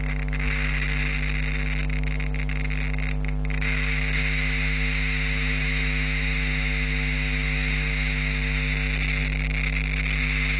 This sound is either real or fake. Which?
real